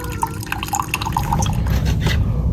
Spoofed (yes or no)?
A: no